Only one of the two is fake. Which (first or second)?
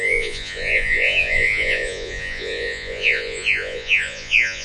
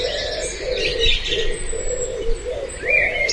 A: first